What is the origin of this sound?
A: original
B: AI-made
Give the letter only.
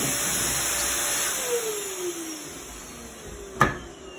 A